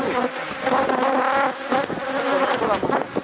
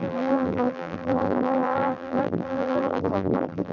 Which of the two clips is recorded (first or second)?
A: first